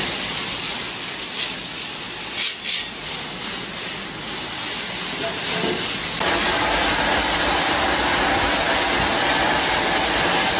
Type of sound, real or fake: real